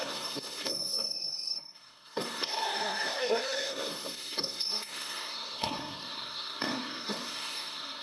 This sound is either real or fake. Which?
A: fake